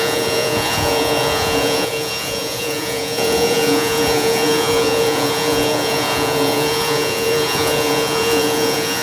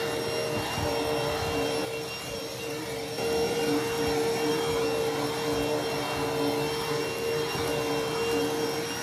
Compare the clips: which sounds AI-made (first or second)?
first